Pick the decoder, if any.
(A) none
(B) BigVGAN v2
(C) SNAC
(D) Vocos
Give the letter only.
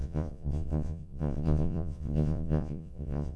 D